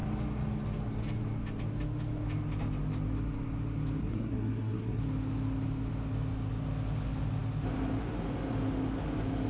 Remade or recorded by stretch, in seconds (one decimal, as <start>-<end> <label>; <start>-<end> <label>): 0.0-4.0 recorded; 4.0-5.0 remade; 5.0-9.5 recorded